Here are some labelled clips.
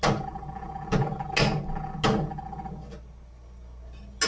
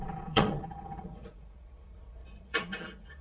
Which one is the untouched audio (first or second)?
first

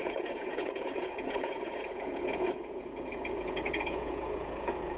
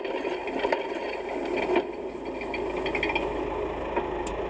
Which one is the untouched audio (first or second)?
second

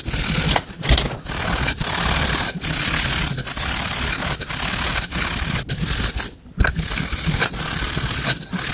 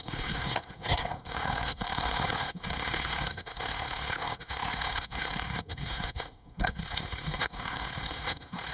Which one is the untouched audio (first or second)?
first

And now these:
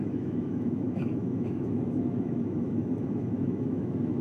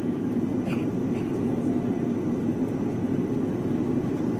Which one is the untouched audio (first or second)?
second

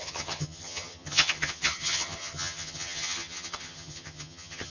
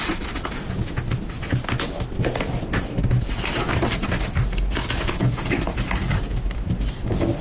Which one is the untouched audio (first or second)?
second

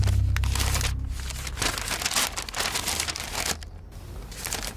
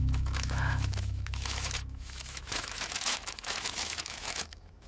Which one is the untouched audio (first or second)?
first